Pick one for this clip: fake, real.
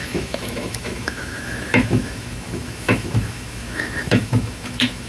fake